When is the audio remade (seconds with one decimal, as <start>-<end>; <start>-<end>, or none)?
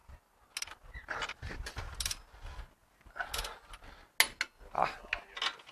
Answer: none